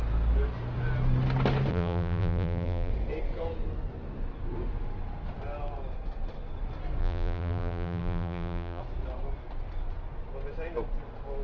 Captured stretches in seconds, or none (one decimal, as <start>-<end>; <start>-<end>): 0.0-1.7; 2.9-7.0; 8.8-11.4